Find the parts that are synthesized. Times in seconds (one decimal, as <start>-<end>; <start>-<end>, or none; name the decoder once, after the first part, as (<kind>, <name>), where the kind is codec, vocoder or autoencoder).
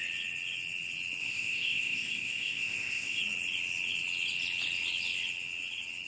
1.2-3.2 (codec, ZipCodec)